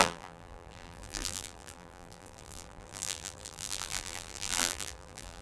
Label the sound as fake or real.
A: fake